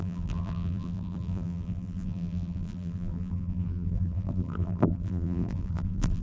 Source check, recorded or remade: remade